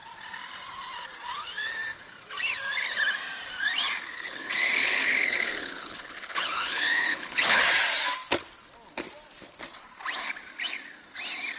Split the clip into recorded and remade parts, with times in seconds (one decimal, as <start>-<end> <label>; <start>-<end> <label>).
0.0-4.1 recorded; 4.1-7.6 remade; 7.6-11.6 recorded